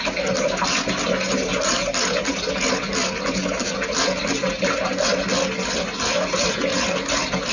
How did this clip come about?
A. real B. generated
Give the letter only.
A